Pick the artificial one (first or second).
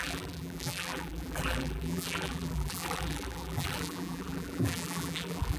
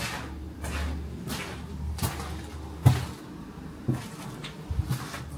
first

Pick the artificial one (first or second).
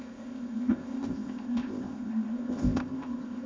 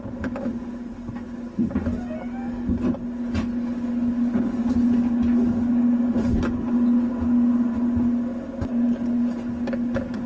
first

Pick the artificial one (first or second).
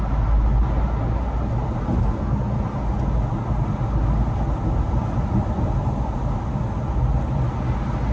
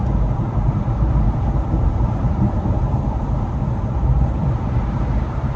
second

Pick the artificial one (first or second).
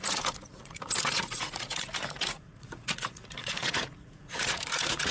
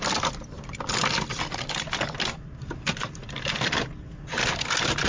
first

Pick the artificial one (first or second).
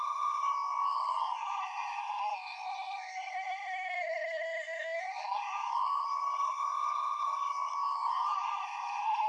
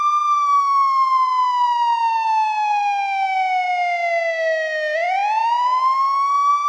first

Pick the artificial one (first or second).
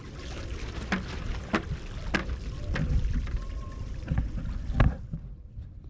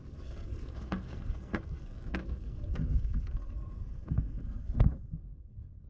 second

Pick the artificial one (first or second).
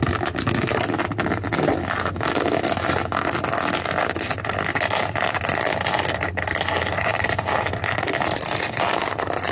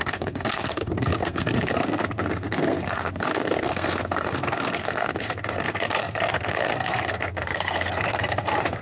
second